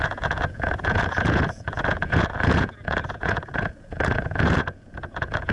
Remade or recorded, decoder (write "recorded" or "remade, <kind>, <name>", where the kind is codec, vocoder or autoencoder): remade, vocoder, Vocos